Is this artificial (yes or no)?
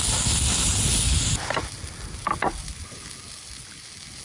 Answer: no